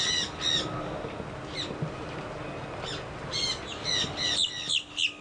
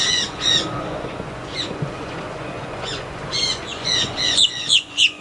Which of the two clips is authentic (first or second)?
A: first